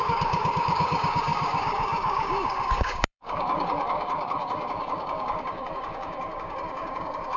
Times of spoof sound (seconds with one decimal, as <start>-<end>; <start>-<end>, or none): 0.0-7.4